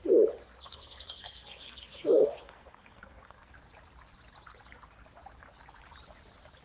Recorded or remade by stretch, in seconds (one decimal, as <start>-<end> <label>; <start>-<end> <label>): 0.0-0.4 recorded; 0.4-3.5 remade; 3.5-6.6 recorded